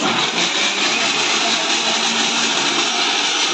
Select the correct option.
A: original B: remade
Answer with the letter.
A